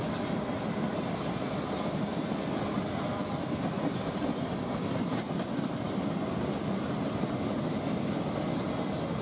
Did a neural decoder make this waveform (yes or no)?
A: no